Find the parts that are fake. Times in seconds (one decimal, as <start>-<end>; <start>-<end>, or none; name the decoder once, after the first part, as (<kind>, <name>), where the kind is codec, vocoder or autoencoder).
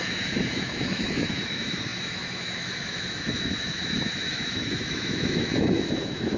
0.0-6.4 (autoencoder, DAC-VAE)